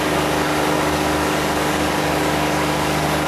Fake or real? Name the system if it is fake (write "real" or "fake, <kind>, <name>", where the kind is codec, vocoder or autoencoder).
fake, codec, DAC